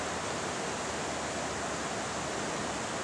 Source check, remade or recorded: recorded